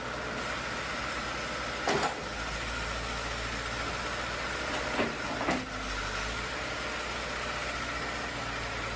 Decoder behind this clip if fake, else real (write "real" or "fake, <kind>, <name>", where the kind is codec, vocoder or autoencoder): real